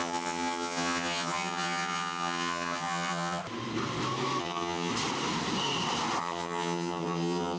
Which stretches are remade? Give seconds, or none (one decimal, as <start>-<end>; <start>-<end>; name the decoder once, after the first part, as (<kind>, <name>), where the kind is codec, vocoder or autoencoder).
0.0-3.4 (vocoder, HiFi-GAN); 4.4-4.9; 6.2-7.6